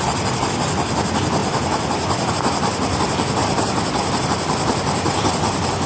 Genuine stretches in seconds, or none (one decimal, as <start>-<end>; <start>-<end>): 0.0-5.9